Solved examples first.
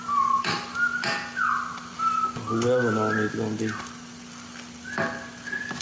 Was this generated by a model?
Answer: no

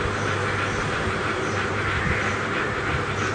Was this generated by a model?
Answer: no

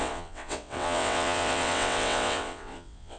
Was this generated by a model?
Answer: yes